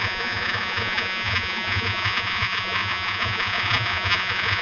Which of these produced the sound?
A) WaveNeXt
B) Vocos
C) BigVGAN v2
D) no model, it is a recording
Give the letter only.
B